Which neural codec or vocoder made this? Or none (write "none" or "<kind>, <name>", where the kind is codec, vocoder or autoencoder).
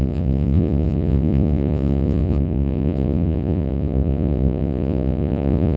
vocoder, Vocos